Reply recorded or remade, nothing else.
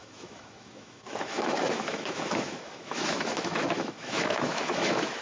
remade